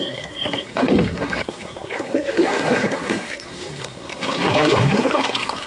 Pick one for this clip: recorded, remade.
remade